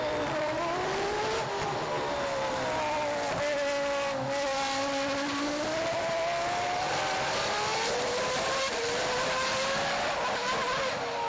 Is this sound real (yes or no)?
yes